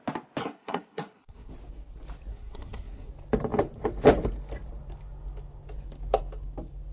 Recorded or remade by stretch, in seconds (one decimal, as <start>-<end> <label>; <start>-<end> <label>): 0.0-0.4 recorded; 0.4-1.5 remade; 1.5-2.3 recorded; 2.3-3.1 remade; 3.1-6.9 recorded